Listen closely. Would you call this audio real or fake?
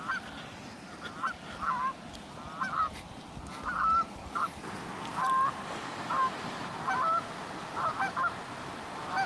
real